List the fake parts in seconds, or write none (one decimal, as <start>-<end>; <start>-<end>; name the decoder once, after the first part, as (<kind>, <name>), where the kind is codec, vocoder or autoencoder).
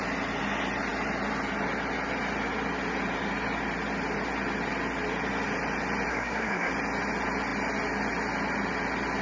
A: 6.1-6.7 (codec, SNAC)